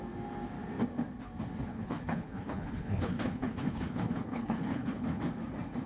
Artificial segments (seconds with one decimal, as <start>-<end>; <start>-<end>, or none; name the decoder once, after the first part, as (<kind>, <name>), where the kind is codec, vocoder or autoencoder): 1.7-5.2 (codec, HILCodec)